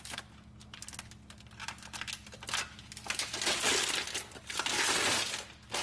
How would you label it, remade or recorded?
recorded